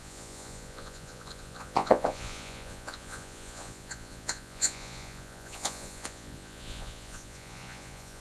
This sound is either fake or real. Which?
fake